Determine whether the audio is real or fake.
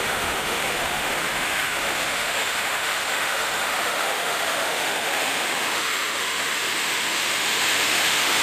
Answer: fake